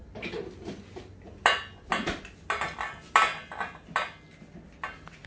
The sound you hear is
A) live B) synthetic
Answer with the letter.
A